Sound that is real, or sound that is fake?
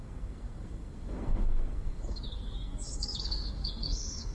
fake